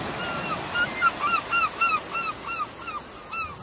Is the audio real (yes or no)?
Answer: yes